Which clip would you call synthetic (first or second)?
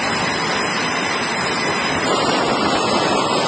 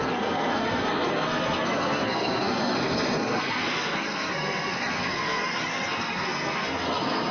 second